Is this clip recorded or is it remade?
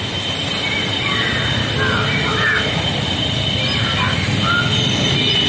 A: recorded